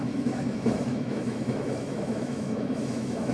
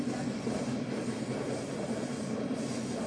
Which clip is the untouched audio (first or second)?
second